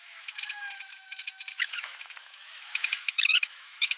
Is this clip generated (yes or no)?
yes